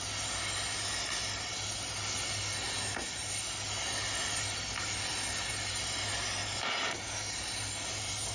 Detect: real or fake real